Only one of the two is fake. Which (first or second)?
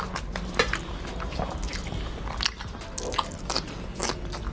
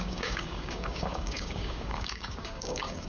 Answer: second